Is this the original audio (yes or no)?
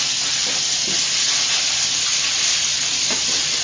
yes